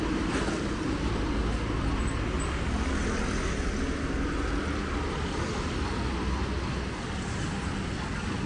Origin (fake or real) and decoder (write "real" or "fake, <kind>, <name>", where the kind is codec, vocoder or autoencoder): real